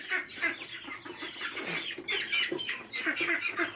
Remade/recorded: recorded